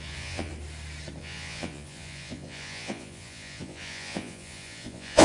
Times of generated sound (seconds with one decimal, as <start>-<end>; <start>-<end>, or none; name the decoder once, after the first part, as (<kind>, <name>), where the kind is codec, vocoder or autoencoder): 0.0-0.5 (vocoder, Vocos); 1.2-5.2